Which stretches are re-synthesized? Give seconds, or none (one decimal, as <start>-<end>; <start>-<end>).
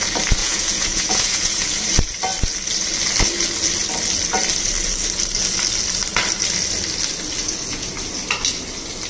0.4-1.8; 7.4-7.9